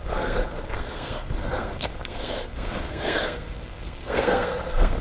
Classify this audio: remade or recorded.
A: remade